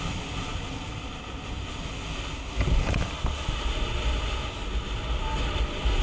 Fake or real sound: real